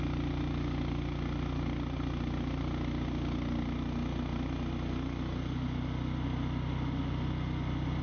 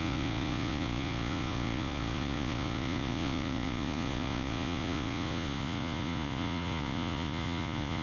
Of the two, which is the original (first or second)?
first